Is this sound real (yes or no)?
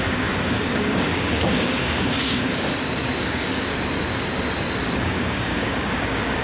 no